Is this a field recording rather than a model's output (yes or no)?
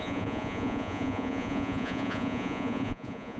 no